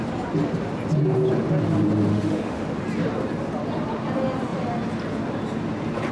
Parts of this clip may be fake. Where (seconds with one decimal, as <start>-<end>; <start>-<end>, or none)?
2.1-2.6